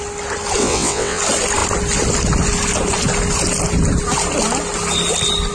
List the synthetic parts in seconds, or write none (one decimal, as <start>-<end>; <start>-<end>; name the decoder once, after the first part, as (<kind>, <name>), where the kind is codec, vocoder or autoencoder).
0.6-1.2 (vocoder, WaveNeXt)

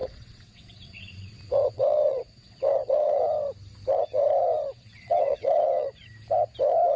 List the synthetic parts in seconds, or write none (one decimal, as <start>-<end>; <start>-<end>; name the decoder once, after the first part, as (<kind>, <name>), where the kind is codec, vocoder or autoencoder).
0.0-3.2 (vocoder, WaveNeXt); 4.7-6.1

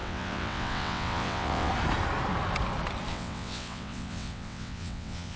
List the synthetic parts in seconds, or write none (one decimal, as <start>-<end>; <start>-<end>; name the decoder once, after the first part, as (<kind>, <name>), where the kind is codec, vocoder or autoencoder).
0.0-1.7 (vocoder, WaveNeXt); 3.1-5.4